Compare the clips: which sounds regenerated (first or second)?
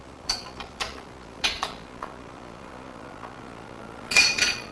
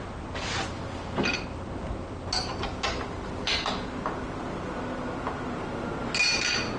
first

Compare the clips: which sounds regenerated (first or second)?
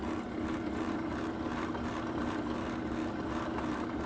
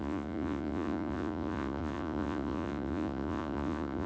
second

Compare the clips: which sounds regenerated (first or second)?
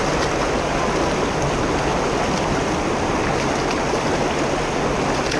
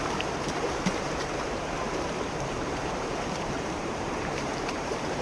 second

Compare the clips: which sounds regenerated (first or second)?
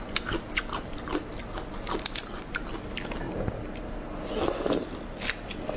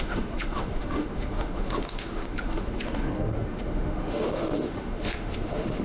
second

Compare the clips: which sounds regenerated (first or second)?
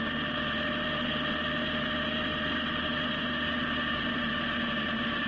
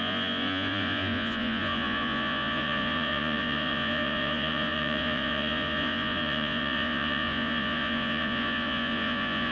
second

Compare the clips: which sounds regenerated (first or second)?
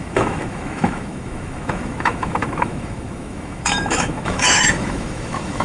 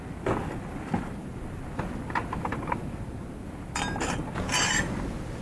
first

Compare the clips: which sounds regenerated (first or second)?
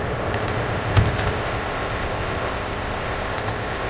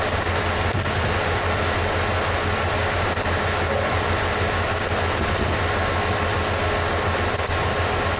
first